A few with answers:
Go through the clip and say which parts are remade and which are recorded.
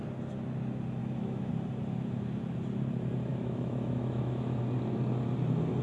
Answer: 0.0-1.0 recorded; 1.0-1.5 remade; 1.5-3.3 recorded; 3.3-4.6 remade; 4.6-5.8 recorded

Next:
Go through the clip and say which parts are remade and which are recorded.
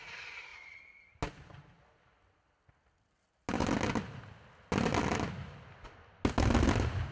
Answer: 0.0-7.1 recorded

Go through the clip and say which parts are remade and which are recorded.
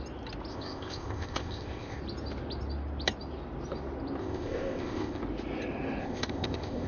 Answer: 0.0-0.5 recorded; 0.5-2.0 remade; 2.0-4.2 recorded; 4.2-5.2 remade; 5.2-6.0 recorded; 6.0-6.9 remade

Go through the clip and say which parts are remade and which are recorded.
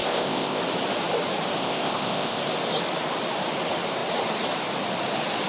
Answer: 0.0-0.6 remade; 0.6-1.6 recorded; 1.6-2.4 remade; 2.4-5.5 recorded